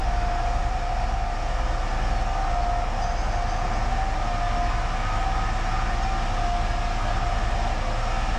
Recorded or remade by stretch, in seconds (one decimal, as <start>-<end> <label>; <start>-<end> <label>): 0.0-8.4 recorded